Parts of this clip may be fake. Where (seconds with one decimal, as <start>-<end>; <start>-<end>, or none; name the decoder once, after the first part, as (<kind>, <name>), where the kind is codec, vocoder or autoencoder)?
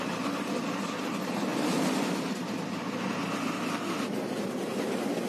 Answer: none